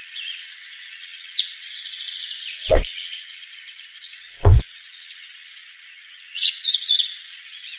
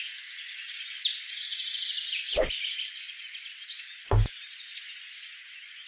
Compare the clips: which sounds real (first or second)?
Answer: second